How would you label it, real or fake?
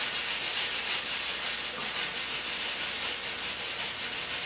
real